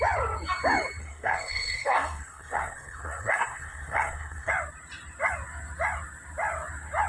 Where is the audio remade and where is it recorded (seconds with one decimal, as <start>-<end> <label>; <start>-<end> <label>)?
0.0-1.0 recorded; 1.0-4.5 remade; 4.5-7.1 recorded